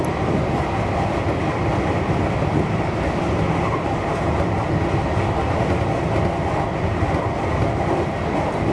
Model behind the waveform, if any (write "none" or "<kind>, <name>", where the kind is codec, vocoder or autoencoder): none